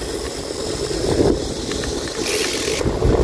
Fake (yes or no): no